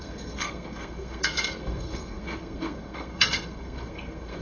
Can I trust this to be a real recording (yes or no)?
no